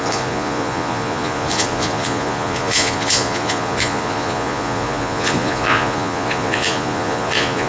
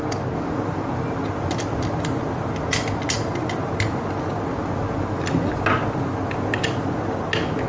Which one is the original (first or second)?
second